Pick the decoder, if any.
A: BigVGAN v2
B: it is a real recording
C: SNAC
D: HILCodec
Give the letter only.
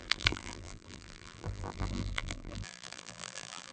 A